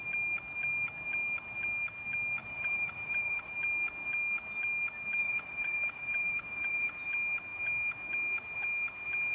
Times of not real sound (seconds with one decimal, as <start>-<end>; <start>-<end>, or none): 2.4-3.5; 5.2-6.9